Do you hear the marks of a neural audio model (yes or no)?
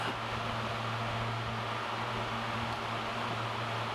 no